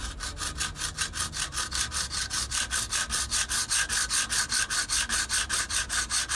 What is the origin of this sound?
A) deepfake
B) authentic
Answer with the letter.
B